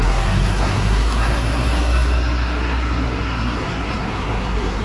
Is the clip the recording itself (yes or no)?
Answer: no